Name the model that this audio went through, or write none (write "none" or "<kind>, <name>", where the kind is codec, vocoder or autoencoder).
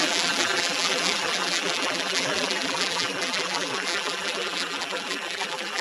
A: vocoder, BigVGAN v2